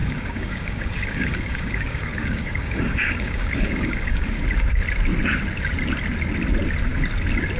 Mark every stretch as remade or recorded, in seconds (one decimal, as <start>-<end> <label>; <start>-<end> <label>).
0.0-4.4 remade; 4.4-7.6 recorded